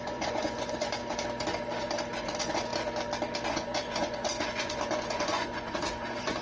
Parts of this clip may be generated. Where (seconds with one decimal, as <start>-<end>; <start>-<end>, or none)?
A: 0.0-1.0; 2.2-2.7; 3.5-6.4